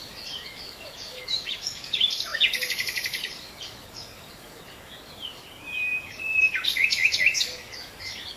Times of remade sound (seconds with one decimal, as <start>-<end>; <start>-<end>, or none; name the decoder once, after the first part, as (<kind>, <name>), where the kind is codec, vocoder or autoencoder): 0.0-8.4 (codec, DAC)